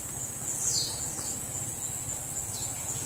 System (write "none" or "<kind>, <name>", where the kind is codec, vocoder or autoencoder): none